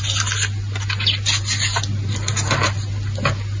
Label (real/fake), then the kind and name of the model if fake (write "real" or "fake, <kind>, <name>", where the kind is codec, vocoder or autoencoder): real